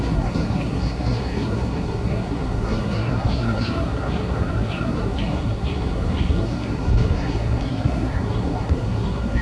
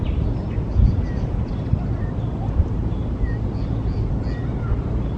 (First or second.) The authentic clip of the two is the second